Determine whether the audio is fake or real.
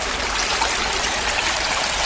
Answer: real